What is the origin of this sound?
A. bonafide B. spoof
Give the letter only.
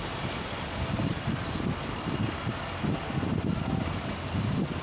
A